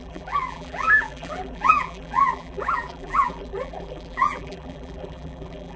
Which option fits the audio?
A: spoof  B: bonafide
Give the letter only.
A